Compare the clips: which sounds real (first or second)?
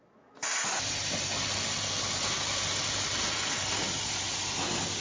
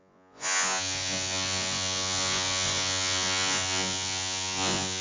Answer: first